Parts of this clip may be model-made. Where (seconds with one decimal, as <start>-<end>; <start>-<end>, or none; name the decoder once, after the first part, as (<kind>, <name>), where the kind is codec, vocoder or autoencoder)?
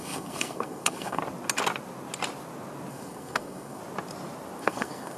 0.0-1.2 (codec, SNAC); 2.9-3.8; 4.6-5.2